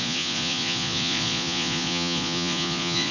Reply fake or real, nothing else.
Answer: fake